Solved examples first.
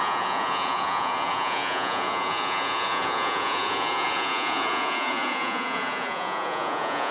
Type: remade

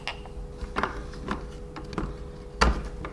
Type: recorded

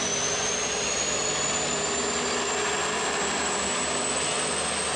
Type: recorded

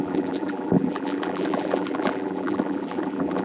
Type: remade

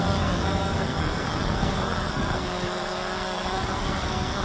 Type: remade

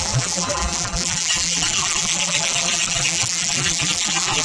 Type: remade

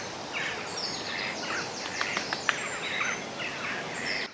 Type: recorded